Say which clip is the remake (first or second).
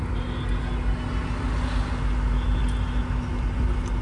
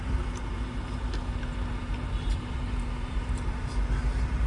second